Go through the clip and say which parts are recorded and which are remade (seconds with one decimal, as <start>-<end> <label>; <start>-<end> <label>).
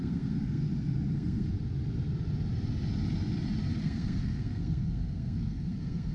0.0-0.6 remade; 0.6-1.1 recorded; 1.1-1.5 remade; 1.5-3.8 recorded; 3.8-6.1 remade